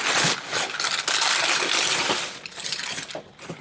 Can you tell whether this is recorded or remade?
recorded